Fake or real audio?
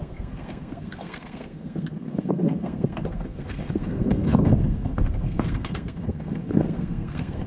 fake